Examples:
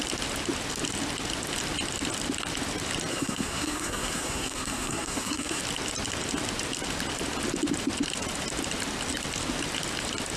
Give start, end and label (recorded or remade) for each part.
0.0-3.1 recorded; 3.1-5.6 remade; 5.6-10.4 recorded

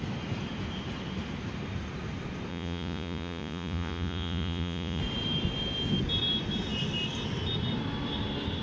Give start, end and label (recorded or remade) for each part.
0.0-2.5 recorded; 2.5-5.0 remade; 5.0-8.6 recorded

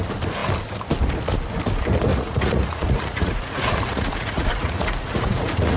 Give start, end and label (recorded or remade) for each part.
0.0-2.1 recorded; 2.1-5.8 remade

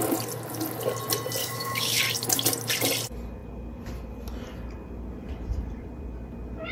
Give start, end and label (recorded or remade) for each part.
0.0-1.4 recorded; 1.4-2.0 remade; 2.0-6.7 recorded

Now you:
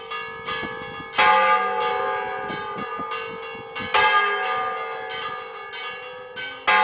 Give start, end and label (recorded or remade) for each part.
0.0-6.8 recorded

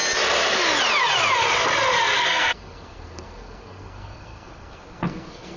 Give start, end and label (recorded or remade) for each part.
0.0-2.2 recorded; 2.2-5.6 remade

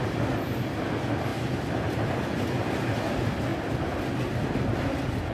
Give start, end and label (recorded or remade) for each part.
0.0-5.3 recorded

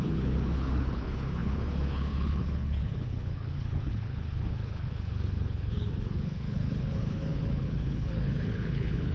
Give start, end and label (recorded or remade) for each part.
0.0-9.1 remade